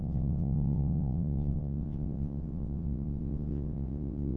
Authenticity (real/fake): fake